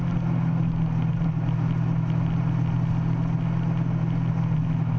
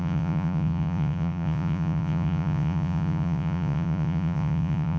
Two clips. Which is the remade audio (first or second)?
second